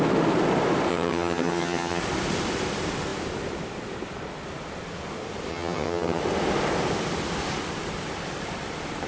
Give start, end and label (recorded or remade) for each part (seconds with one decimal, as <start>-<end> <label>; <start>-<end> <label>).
0.0-0.9 recorded; 0.9-2.0 remade; 2.0-5.5 recorded; 5.5-6.2 remade; 6.2-9.1 recorded